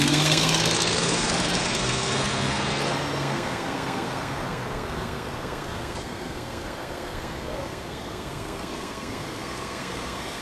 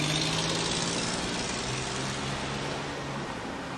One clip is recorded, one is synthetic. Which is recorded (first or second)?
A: second